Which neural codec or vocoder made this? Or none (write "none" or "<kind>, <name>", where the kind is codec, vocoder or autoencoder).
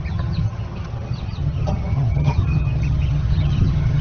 vocoder, HiFi-GAN